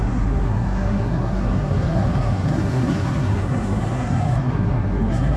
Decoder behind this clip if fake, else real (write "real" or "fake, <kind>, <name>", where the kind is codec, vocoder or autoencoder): fake, codec, SNAC